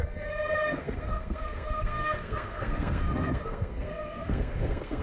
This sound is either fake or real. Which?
fake